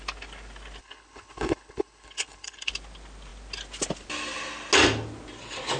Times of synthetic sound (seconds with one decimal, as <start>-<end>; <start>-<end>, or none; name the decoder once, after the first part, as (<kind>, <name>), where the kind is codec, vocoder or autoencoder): 0.8-2.7 (codec, HILCodec)